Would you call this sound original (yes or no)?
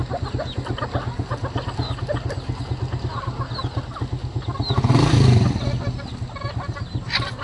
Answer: yes